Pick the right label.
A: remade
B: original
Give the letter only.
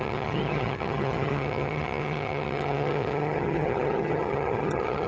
A